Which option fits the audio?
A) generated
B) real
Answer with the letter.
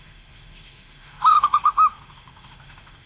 A